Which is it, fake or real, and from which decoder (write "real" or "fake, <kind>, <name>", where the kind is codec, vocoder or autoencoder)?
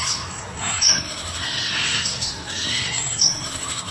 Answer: fake, codec, SNAC